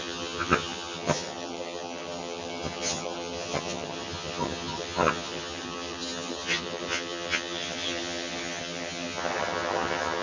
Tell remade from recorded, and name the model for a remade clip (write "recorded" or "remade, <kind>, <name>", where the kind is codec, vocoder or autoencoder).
remade, vocoder, HiFi-GAN